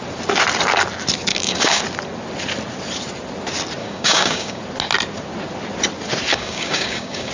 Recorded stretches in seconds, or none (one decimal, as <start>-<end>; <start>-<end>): 0.0-1.3; 1.8-3.8; 4.6-6.3